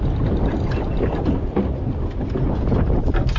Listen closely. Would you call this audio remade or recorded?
recorded